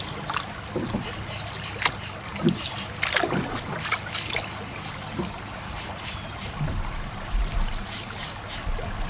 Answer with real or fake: real